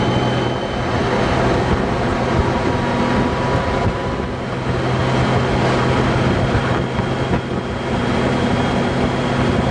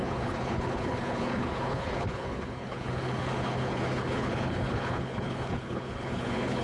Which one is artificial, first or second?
second